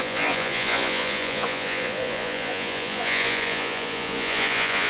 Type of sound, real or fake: fake